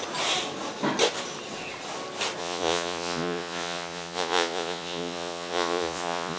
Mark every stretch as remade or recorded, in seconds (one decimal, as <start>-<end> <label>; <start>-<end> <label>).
0.0-2.4 recorded; 2.4-6.4 remade